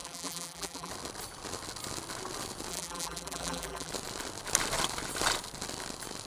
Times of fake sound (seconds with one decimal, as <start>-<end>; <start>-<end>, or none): 0.0-0.9; 2.7-3.9